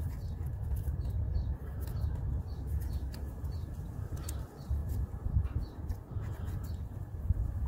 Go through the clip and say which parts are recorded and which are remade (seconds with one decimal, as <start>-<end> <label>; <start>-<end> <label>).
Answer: 0.0-7.7 recorded